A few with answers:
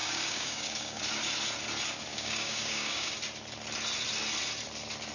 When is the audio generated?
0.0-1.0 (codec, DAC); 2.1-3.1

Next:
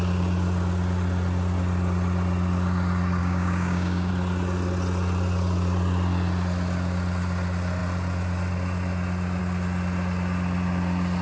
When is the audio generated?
3.2-4.1 (codec, DAC)